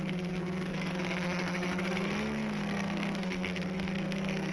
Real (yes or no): no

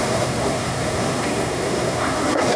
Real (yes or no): no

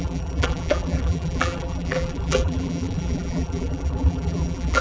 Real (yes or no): no